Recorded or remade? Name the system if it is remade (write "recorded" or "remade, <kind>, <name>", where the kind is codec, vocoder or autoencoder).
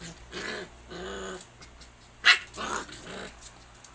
recorded